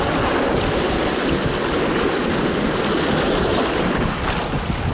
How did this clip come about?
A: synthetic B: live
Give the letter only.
B